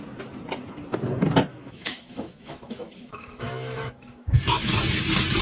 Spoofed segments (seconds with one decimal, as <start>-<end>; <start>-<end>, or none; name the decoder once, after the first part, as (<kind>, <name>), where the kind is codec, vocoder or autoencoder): 1.5-4.7 (autoencoder, DAC-VAE)